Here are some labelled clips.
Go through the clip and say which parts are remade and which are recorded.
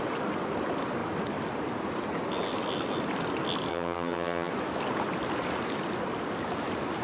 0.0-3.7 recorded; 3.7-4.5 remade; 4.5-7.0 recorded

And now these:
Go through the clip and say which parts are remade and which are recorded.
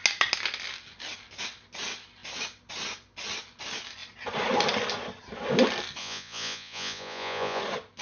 0.0-6.0 recorded; 6.0-7.6 remade; 7.6-8.0 recorded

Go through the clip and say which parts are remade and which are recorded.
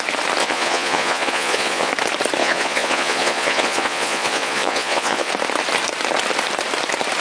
0.0-0.4 recorded; 0.4-1.9 remade; 1.9-2.4 recorded; 2.4-5.3 remade; 5.3-7.2 recorded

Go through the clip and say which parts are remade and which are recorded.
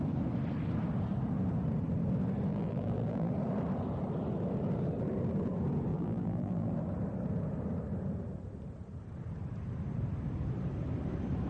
0.0-2.5 recorded; 2.5-3.3 remade; 3.3-5.9 recorded; 5.9-6.7 remade; 6.7-11.5 recorded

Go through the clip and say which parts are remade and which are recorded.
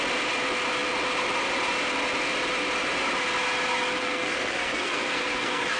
0.0-4.0 recorded; 4.0-5.8 remade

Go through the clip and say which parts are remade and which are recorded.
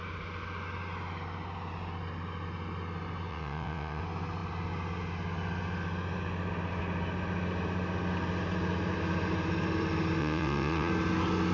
0.0-3.3 recorded; 3.3-4.0 remade; 4.0-10.2 recorded; 10.2-10.9 remade; 10.9-11.5 recorded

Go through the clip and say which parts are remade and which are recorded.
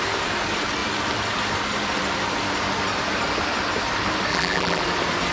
0.0-4.3 recorded; 4.3-4.8 remade; 4.8-5.3 recorded